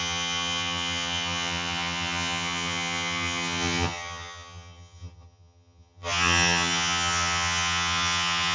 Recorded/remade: remade